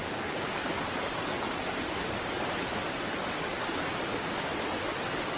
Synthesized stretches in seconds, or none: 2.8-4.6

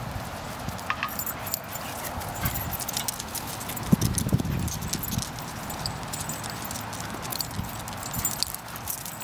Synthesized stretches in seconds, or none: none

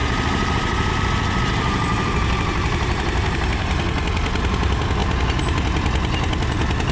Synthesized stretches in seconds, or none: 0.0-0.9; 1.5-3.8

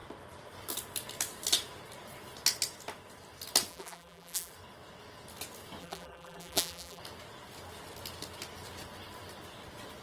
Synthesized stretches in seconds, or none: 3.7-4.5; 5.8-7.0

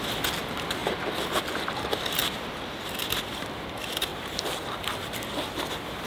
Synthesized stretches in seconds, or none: 2.2-3.4; 4.1-4.7

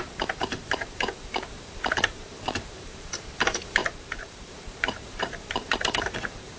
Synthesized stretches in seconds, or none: 0.0-6.6